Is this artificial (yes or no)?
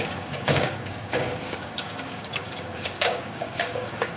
yes